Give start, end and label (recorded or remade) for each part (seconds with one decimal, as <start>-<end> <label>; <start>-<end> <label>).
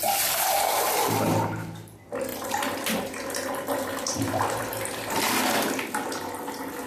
0.0-2.3 recorded; 2.3-5.4 remade; 5.4-6.9 recorded